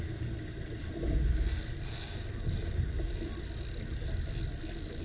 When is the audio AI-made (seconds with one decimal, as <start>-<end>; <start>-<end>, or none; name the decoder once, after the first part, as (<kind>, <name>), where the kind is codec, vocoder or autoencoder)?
2.2-3.1 (vocoder, BigVGAN v2)